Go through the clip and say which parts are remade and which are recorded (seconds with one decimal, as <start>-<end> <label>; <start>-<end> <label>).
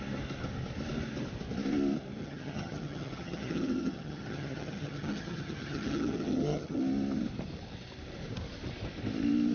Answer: 0.0-2.2 recorded; 2.2-6.8 remade; 6.8-9.5 recorded